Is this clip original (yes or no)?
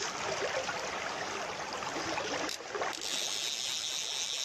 yes